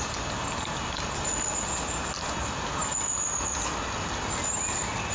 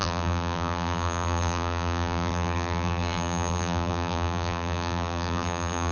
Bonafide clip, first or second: first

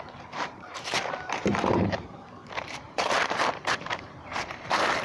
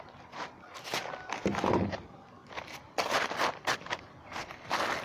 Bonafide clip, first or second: second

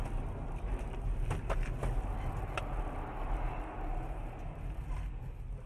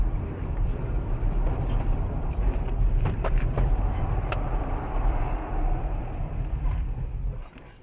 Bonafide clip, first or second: first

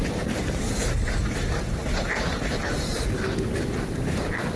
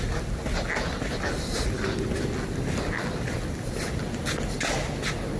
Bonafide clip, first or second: second